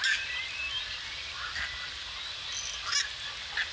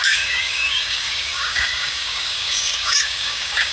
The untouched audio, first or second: first